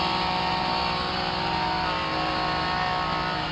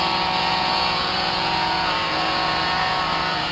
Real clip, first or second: first